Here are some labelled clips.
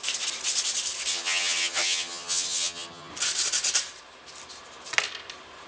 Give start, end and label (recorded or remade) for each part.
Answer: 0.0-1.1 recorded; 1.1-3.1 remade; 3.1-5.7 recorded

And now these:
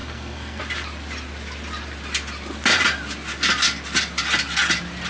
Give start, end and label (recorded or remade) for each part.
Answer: 0.0-0.6 remade; 0.6-5.1 recorded